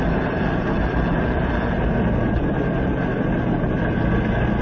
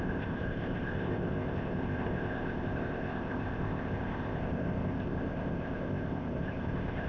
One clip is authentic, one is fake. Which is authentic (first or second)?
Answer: first